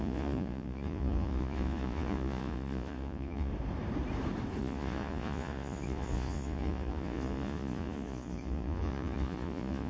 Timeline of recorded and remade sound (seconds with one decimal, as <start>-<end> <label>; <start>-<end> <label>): 0.0-3.5 remade; 3.5-4.6 recorded; 4.6-9.9 remade

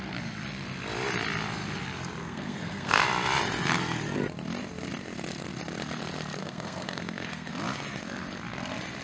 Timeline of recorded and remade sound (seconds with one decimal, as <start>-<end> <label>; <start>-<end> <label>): 0.0-2.2 recorded; 2.2-3.0 remade; 3.0-6.4 recorded; 6.4-7.5 remade; 7.5-9.0 recorded